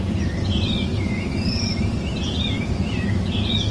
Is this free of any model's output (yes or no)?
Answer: no